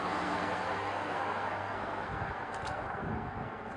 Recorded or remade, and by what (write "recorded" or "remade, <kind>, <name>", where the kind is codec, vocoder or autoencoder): remade, codec, SNAC